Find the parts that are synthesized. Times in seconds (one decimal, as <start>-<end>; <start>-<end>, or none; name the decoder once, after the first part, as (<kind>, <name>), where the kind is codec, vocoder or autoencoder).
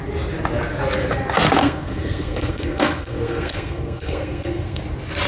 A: 1.6-4.8 (codec, SNAC)